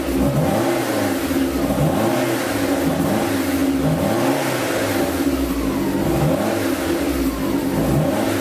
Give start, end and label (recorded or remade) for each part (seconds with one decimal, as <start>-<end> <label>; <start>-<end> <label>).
0.0-8.4 recorded